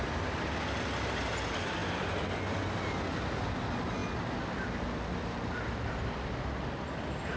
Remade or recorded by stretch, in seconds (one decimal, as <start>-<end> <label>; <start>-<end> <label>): 0.0-7.4 recorded